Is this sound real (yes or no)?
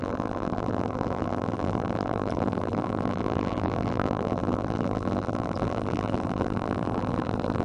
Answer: no